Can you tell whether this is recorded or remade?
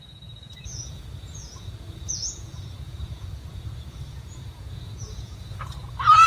remade